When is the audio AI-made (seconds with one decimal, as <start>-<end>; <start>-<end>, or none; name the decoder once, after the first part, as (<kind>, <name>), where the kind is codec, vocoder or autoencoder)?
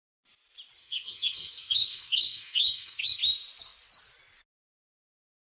0.8-3.2 (codec, SNAC)